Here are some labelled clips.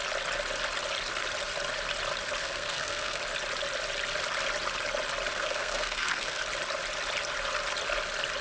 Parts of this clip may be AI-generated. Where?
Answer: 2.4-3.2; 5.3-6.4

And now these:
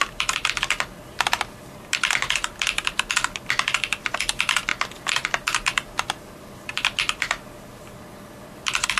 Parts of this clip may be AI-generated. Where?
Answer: none

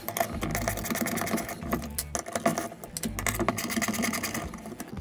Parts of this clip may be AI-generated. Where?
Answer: none

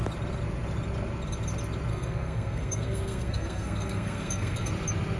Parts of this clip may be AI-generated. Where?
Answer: 1.9-4.7